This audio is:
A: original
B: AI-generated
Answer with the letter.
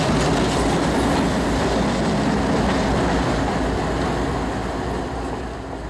A